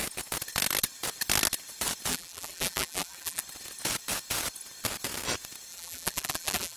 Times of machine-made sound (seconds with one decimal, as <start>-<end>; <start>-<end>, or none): 2.1-3.4; 5.7-6.8